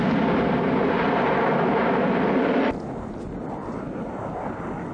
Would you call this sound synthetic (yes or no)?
no